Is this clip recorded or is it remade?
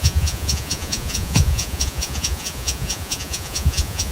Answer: remade